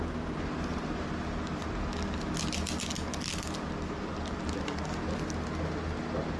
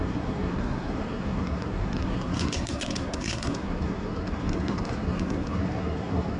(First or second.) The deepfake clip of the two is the second